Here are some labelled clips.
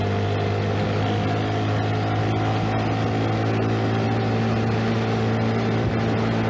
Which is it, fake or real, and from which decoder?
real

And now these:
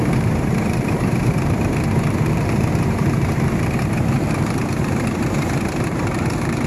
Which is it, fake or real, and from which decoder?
fake, vocoder, BigVGAN v2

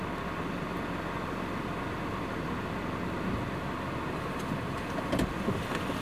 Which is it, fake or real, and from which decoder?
real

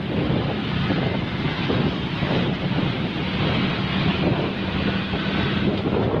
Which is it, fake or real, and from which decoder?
real